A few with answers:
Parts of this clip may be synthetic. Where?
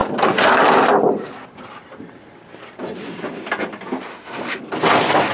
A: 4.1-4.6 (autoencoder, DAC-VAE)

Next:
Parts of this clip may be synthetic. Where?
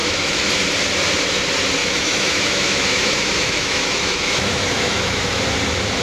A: 0.0-0.5 (autoencoder, DAC-VAE); 1.8-5.4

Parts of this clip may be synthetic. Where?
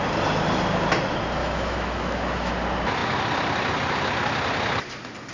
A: 1.4-2.5 (autoencoder, DAC-VAE)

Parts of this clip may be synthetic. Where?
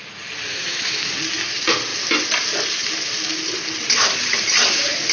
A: 0.5-1.1 (autoencoder, DAC-VAE)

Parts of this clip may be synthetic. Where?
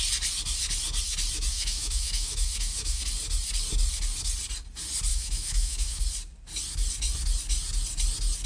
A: 1.5-3.0 (autoencoder, DAC-VAE); 5.1-6.0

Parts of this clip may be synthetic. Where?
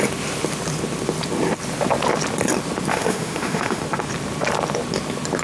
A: 2.9-3.8 (autoencoder, DAC-VAE)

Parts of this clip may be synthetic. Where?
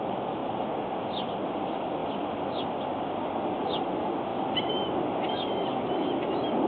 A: none